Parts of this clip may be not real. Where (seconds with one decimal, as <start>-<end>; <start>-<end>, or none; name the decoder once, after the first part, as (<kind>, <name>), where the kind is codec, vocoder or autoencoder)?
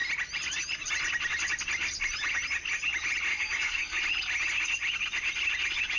3.3-4.0 (codec, DAC)